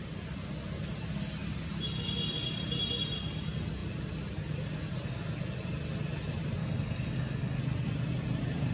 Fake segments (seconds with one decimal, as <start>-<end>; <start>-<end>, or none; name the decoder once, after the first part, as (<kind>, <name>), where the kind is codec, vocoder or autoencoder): 6.6-7.6 (codec, DAC)